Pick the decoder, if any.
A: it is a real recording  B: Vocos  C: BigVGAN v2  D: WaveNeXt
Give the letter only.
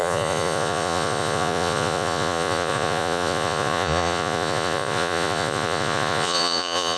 B